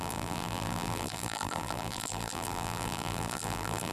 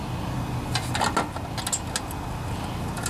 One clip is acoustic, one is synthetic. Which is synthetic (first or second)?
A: first